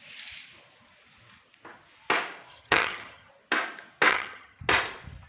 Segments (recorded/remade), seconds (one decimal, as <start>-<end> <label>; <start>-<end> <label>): 0.0-2.5 recorded; 2.5-3.3 remade; 3.3-4.1 recorded; 4.1-4.6 remade; 4.6-5.3 recorded